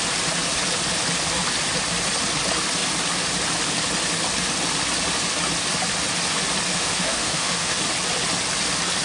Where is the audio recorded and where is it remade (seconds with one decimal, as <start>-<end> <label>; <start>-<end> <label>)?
0.0-6.7 recorded; 6.7-7.8 remade; 7.8-9.0 recorded